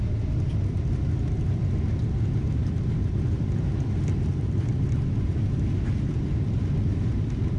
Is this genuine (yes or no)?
no